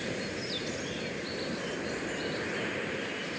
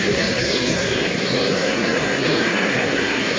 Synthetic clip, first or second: second